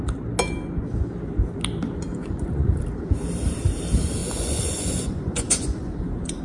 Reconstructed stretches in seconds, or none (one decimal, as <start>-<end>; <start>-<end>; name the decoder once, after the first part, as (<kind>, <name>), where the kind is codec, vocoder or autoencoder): 2.1-2.8 (vocoder, Vocos); 4.2-6.4